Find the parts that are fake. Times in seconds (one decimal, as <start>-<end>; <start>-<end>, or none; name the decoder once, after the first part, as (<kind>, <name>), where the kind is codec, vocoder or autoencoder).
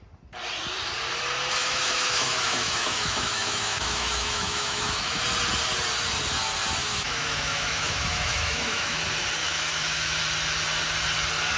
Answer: 1.6-5.2 (autoencoder, DAC-VAE); 6.8-9.0; 9.4-10.2